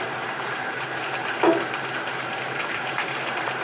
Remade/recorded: remade